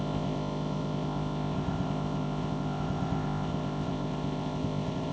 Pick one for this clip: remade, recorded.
remade